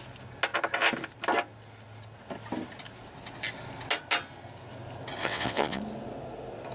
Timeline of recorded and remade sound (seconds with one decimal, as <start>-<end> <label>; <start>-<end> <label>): 0.0-5.2 recorded; 5.2-5.8 remade; 5.8-6.7 recorded